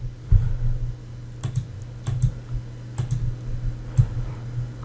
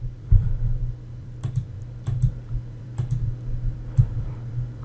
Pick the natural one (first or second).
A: first